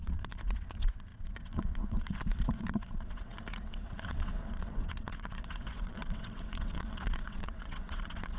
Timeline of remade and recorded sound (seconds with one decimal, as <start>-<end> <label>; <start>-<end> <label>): 0.0-8.4 remade